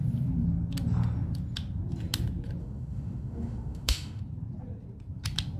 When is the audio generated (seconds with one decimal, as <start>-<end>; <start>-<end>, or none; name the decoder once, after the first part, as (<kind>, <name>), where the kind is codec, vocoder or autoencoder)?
2.6-4.2 (autoencoder, DAC-VAE)